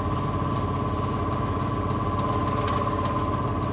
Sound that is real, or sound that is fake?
real